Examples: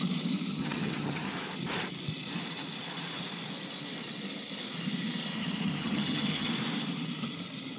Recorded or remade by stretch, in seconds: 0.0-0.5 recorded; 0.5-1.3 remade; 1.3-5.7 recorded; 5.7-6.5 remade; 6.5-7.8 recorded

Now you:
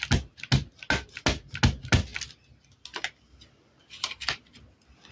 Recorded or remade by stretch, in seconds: 0.0-5.1 recorded